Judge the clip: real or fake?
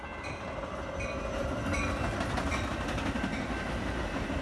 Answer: real